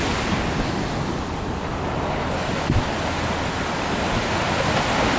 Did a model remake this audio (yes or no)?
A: no